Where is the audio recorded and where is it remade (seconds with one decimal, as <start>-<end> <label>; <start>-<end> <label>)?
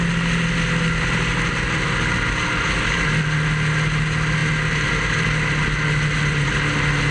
0.0-7.1 recorded